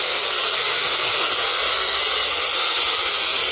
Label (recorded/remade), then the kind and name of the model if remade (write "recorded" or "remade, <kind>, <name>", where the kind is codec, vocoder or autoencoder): remade, codec, SNAC